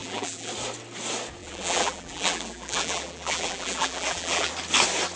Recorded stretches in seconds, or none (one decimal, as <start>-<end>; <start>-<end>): 0.5-1.4; 4.5-5.2